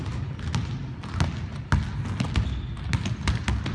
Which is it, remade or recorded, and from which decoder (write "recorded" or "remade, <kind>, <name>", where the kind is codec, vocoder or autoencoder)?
recorded